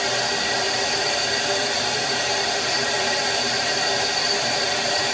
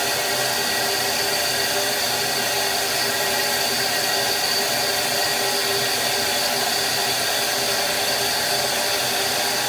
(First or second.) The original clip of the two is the second